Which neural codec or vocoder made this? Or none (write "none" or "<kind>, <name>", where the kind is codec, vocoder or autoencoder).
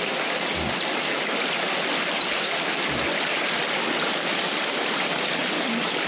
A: none